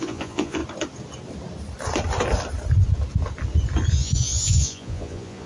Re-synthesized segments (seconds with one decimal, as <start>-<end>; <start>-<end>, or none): 0.0-0.6; 3.9-5.5

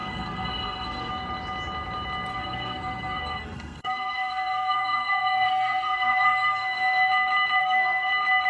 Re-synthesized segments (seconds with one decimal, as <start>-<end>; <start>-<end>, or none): 0.0-1.1; 2.3-7.1; 7.6-8.1

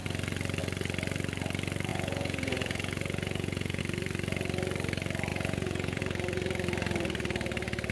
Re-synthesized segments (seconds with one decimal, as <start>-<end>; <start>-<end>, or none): 1.9-3.8; 5.3-6.0

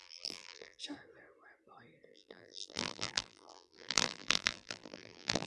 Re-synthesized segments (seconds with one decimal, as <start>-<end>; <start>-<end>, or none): 0.0-0.8; 2.1-5.5

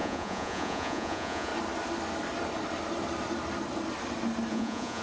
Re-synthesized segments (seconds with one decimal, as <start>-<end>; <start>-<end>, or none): 0.0-1.5; 4.5-5.0

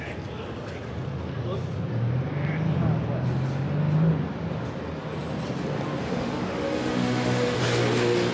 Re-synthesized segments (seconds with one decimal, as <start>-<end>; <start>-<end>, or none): 6.0-7.6

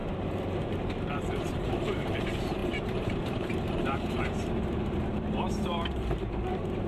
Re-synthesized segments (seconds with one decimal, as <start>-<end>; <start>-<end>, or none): 0.6-6.9